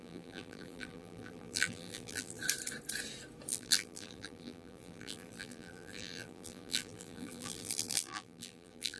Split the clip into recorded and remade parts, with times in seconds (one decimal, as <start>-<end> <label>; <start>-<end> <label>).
0.0-2.4 remade; 2.4-3.5 recorded; 3.5-9.0 remade